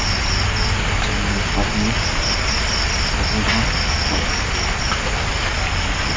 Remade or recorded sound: recorded